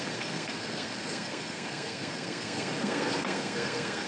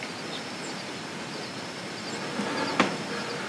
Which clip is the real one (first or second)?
second